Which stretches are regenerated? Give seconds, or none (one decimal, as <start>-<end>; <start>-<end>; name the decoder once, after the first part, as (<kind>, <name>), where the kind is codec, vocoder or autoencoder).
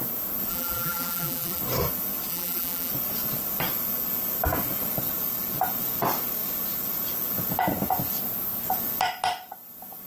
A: 0.5-1.6 (vocoder, BigVGAN v2); 2.3-2.9